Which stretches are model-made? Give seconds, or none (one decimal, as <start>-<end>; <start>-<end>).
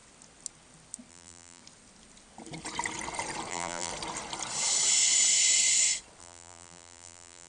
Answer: 1.1-1.6; 3.5-3.9; 6.2-7.5